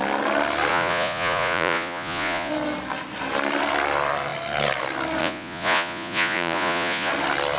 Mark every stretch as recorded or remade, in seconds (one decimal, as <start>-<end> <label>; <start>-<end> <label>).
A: 0.0-0.7 recorded; 0.7-2.5 remade; 2.5-5.2 recorded; 5.2-7.1 remade; 7.1-7.6 recorded